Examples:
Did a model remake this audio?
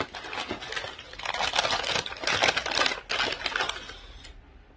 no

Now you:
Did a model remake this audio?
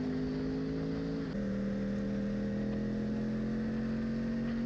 no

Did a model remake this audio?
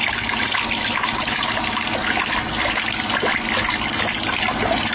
no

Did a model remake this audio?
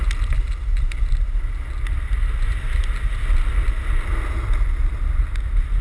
no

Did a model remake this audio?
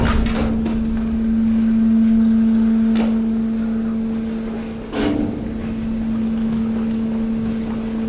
no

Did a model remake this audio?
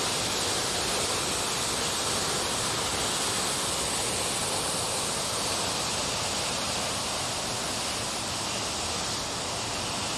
no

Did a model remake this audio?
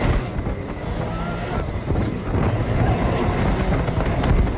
no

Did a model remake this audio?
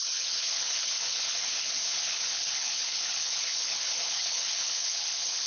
yes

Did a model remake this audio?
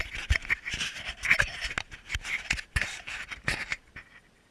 no